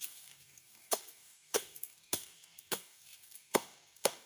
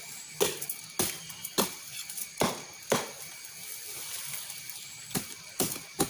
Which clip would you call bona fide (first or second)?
second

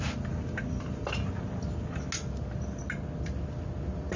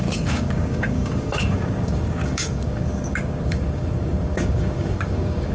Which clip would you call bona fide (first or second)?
first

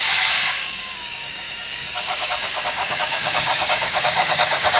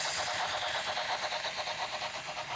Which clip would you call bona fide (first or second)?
second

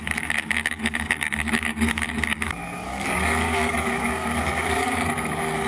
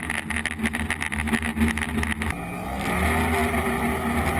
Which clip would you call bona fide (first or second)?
second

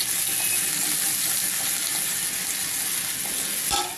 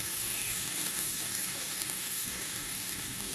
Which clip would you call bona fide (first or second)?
first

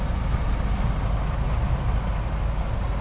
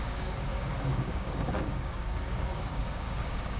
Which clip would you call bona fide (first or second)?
first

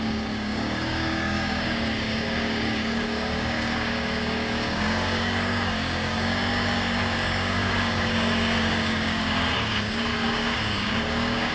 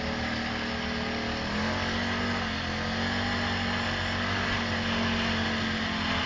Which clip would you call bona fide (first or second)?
second